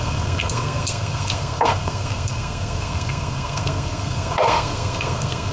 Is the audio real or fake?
fake